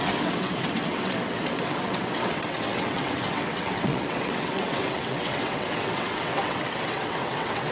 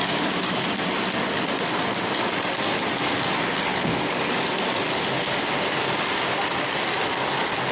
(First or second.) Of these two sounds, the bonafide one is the second